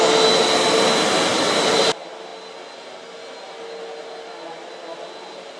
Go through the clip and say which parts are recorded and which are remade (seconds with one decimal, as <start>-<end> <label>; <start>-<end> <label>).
0.0-1.3 recorded; 1.3-1.9 remade; 1.9-5.6 recorded